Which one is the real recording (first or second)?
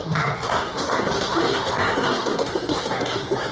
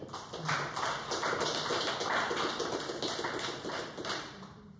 second